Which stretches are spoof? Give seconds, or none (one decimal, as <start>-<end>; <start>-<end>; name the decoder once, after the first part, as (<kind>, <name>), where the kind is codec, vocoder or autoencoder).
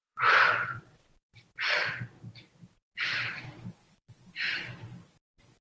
0.0-1.2 (vocoder, WaveNeXt); 3.7-4.5